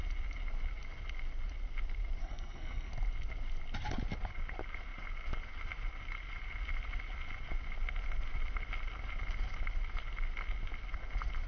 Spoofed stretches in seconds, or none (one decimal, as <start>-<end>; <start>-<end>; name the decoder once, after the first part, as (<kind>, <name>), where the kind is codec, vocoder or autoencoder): 2.2-2.9 (codec, SNAC)